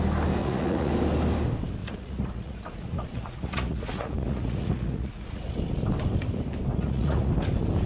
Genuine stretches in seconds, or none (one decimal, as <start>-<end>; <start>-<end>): 0.0-0.4; 0.9-1.8; 5.4-6.7; 7.3-7.9